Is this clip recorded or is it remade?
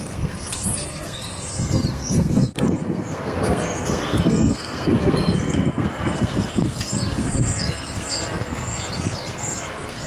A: remade